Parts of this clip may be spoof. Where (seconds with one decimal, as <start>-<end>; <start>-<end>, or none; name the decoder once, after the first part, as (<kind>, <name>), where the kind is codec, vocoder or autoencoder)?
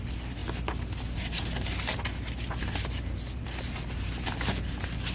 none